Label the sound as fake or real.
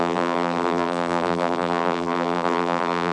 fake